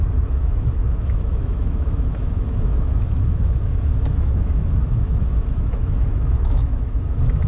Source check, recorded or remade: remade